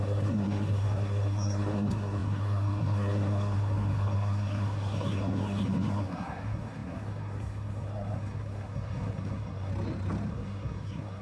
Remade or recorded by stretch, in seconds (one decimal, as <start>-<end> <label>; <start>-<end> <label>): 0.0-9.7 remade; 9.7-10.3 recorded; 10.3-11.2 remade